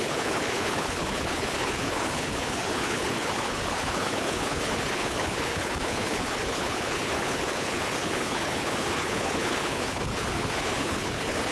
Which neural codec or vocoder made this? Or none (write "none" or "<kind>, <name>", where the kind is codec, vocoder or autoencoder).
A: codec, HILCodec